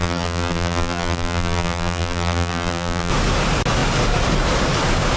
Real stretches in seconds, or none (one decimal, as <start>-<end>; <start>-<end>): 3.1-5.2